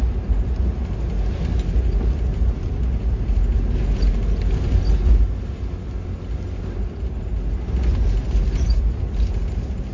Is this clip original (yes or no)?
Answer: yes